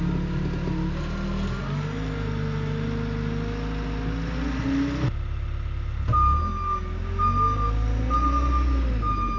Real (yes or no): yes